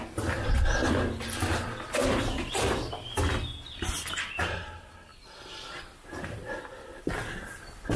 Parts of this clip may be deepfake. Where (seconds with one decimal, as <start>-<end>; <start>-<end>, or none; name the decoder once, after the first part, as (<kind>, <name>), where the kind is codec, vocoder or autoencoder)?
2.0-3.2 (vocoder, BigVGAN v2)